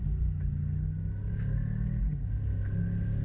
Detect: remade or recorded recorded